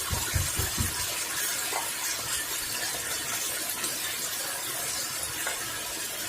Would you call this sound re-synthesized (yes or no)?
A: no